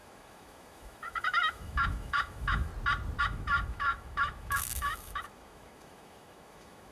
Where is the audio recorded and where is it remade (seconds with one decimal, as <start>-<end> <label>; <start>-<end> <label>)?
0.0-2.7 remade; 2.7-3.2 recorded; 3.2-6.9 remade